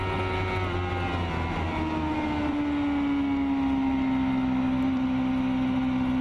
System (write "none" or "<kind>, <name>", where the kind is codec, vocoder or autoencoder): none